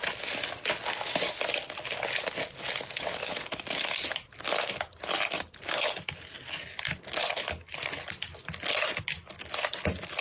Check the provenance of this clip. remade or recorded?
recorded